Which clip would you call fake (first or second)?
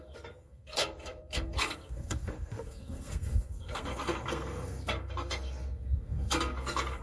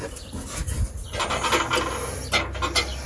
first